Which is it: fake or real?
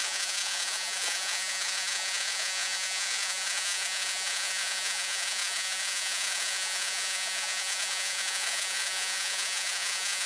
fake